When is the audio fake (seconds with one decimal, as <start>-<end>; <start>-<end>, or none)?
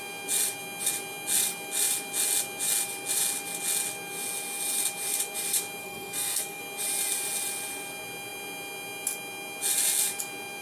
5.8-6.6